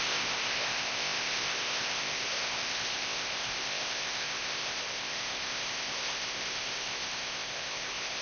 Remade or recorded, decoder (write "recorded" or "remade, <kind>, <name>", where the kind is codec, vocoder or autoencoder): remade, codec, ZipCodec